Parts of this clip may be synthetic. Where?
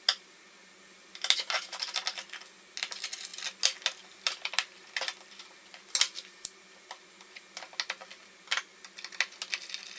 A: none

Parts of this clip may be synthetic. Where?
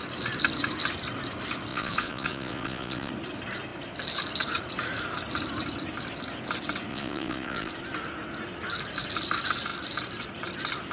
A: 1.7-3.1 (vocoder, Vocos); 6.9-7.7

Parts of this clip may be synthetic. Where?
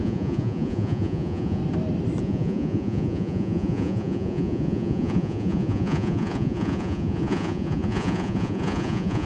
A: 0.0-1.6 (vocoder, Vocos); 2.2-9.3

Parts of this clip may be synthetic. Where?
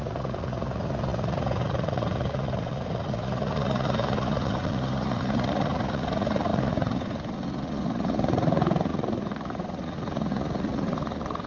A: 0.0-11.5 (vocoder, Vocos)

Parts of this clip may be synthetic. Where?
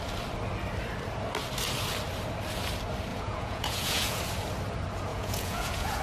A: 3.1-4.2 (vocoder, Vocos); 5.1-6.0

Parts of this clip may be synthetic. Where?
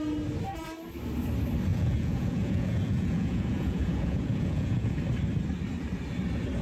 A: 1.7-5.0 (vocoder, Vocos)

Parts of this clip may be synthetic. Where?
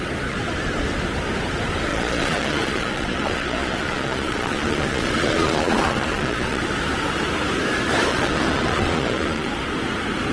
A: 1.9-6.6 (vocoder, Vocos); 8.1-9.5